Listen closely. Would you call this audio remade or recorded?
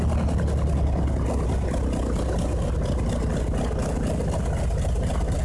recorded